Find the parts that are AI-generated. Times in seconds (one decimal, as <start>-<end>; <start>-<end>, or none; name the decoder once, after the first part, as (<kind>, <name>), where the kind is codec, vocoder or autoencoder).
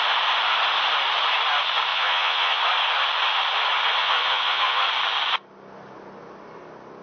1.9-2.6 (vocoder, Vocos); 4.0-4.8